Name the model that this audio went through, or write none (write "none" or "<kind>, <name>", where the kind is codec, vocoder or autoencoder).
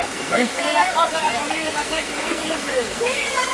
codec, SNAC